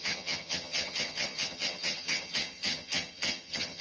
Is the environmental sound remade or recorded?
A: remade